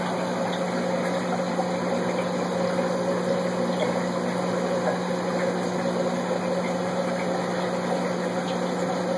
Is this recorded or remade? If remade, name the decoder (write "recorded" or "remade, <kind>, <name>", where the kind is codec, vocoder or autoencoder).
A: recorded